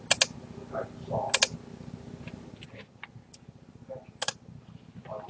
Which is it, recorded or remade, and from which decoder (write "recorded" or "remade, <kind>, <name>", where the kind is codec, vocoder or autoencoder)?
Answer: recorded